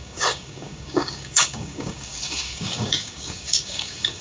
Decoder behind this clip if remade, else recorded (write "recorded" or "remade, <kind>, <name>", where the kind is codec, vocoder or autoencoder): remade, codec, DAC